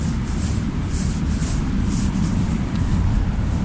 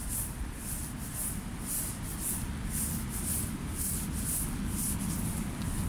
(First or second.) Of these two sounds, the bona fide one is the second